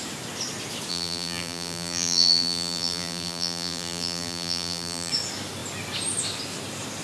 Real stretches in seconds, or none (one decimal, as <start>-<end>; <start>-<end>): 0.0-0.9; 5.1-7.0